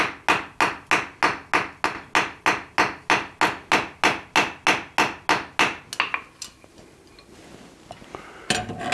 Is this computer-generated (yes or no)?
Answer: no